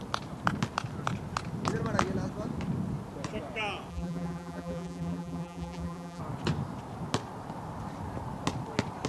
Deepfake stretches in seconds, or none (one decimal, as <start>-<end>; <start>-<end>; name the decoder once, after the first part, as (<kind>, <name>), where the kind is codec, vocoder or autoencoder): 3.9-6.2 (vocoder, BigVGAN v2)